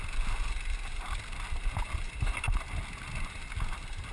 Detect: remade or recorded recorded